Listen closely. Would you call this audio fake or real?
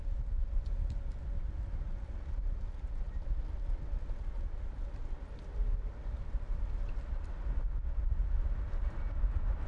real